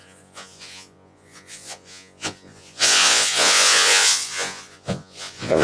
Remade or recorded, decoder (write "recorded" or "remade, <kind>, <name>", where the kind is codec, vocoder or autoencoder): remade, vocoder, Vocos